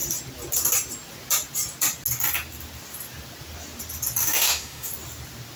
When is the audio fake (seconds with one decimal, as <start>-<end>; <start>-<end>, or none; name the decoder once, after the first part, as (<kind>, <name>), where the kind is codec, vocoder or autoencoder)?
4.2-4.9 (autoencoder, DAC-VAE)